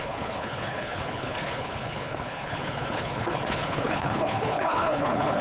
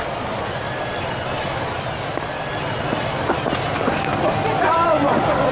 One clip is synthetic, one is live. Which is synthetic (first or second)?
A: first